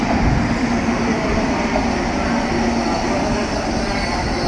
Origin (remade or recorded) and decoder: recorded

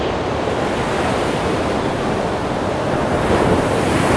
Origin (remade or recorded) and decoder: remade, vocoder, BigVGAN v2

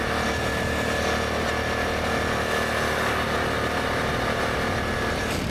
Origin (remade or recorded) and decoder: recorded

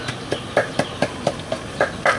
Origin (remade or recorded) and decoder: recorded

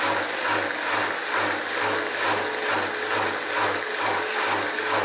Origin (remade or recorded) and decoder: recorded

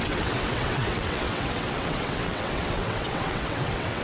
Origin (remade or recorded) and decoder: remade, vocoder, WaveNeXt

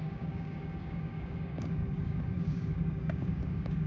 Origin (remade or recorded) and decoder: remade, codec, DAC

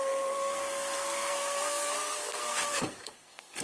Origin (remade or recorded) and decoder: remade, codec, SNAC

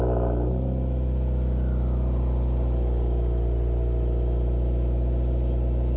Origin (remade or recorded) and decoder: recorded